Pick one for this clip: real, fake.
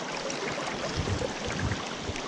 real